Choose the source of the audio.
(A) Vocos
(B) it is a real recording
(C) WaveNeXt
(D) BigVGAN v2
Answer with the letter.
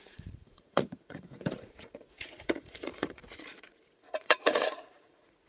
A